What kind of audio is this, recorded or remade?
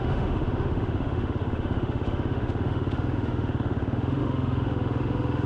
remade